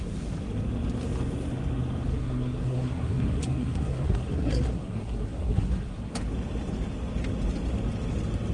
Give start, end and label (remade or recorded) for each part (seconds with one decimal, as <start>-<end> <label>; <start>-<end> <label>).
0.0-2.1 recorded; 2.1-6.1 remade; 6.1-8.5 recorded